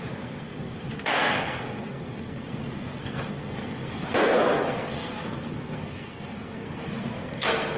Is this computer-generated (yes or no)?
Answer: yes